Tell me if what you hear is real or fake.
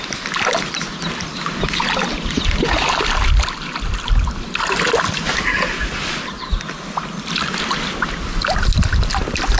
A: real